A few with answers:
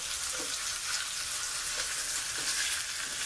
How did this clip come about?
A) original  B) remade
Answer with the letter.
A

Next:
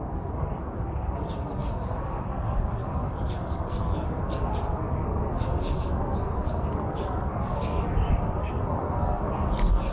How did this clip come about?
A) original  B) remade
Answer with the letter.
B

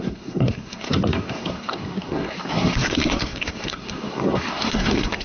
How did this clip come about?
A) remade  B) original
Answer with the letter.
A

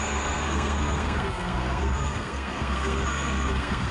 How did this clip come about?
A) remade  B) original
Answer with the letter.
A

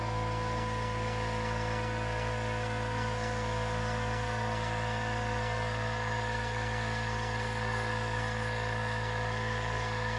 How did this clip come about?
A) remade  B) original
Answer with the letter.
A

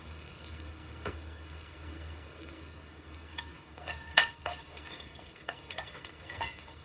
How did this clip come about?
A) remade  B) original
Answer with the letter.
A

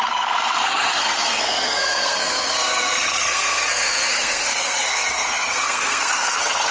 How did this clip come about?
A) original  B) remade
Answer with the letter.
B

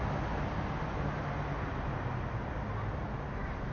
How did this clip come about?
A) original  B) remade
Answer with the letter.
A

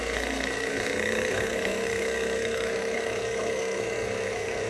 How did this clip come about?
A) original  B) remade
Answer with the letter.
B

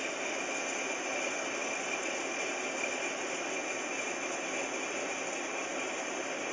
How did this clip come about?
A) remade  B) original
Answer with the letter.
B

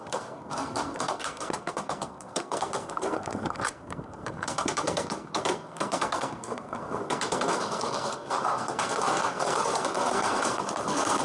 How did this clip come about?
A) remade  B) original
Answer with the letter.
A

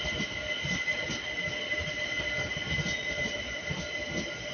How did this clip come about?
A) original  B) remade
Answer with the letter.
A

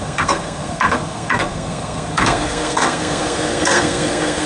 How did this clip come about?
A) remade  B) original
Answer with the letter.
A